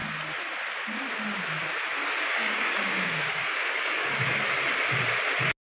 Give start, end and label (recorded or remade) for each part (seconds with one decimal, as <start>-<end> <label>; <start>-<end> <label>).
0.0-2.3 recorded; 2.3-4.2 remade; 4.2-5.6 recorded